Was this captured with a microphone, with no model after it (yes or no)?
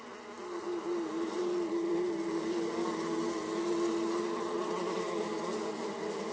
yes